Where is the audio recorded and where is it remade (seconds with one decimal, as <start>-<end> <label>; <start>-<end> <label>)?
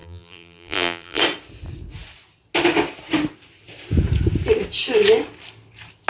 0.0-1.2 remade; 1.2-6.1 recorded